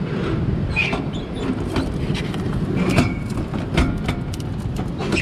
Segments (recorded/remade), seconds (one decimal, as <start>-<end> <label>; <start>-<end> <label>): 0.0-5.2 recorded